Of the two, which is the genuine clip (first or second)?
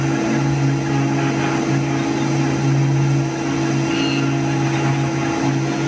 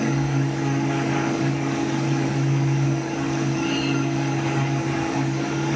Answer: first